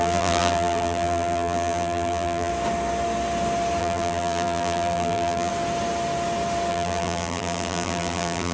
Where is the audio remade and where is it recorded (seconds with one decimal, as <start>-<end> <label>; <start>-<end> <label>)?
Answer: 0.0-2.5 remade; 2.5-3.8 recorded; 3.8-5.5 remade; 5.5-6.7 recorded; 6.7-8.5 remade